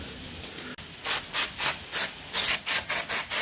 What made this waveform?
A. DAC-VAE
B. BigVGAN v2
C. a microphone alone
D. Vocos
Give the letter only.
C